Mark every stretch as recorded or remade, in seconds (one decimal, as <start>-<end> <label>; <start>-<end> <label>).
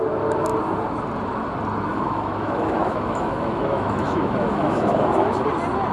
0.0-1.9 recorded; 1.9-5.4 remade; 5.4-5.9 recorded